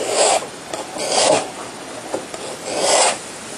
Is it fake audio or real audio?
real